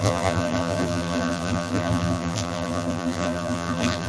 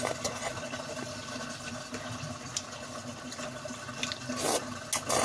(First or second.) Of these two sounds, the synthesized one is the first